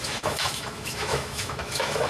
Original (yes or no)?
no